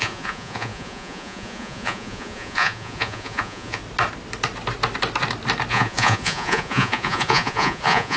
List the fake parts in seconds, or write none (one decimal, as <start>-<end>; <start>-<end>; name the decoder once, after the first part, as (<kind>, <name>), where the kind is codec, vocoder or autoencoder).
0.0-3.8 (vocoder, Vocos); 5.7-8.2